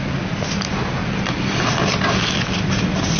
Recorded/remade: recorded